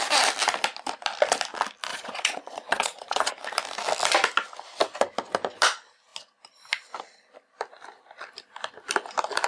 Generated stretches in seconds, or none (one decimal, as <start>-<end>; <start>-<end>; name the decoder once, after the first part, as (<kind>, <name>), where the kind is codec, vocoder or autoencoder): 1.9-3.3 (vocoder, Vocos)